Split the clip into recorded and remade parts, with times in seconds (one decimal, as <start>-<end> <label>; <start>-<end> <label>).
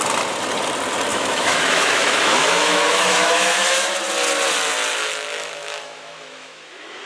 0.0-1.1 recorded; 1.1-3.9 remade; 3.9-4.9 recorded; 4.9-7.1 remade